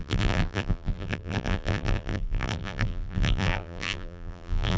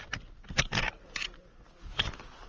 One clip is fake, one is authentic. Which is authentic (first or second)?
second